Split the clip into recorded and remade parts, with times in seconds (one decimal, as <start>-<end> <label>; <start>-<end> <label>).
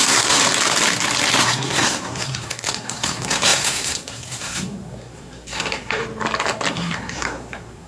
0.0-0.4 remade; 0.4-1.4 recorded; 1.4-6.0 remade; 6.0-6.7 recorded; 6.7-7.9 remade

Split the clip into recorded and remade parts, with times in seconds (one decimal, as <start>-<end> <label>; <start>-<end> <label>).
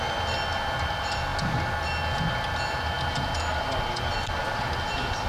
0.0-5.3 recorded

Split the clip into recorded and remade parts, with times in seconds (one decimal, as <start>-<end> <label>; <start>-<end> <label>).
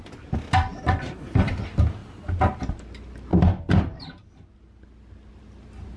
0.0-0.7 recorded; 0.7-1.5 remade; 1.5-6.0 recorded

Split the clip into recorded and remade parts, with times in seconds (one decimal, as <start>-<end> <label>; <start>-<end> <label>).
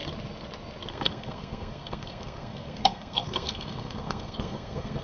0.0-0.9 recorded; 0.9-5.0 remade